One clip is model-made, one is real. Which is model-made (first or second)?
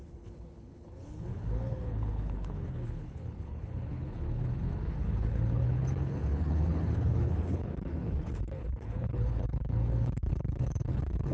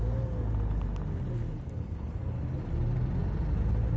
first